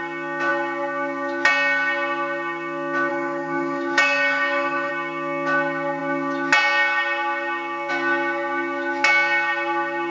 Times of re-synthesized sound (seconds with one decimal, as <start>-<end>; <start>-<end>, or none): 3.1-4.9